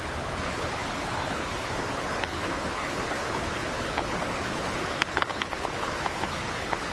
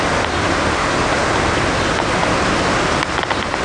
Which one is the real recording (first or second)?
second